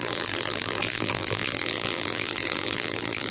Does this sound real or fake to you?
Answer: fake